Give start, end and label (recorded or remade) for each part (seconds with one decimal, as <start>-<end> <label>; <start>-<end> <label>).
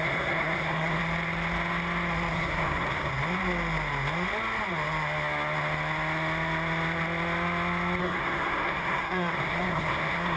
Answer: 0.0-1.0 remade; 1.0-2.3 recorded; 2.3-3.1 remade; 3.1-8.0 recorded; 8.0-10.4 remade